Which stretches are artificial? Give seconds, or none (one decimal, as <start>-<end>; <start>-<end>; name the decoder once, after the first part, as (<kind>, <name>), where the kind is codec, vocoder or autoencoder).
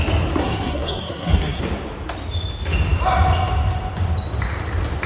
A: 0.4-1.6 (codec, SNAC)